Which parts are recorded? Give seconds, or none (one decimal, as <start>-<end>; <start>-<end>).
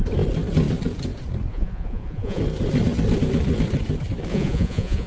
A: 0.0-1.5; 2.4-4.3